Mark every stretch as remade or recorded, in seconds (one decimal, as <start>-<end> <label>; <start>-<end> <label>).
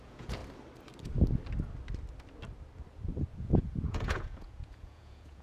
0.0-0.4 remade; 0.4-3.3 recorded; 3.3-5.4 remade